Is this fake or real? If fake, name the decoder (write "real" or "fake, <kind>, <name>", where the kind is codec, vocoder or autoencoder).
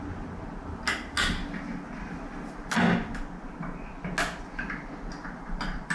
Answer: real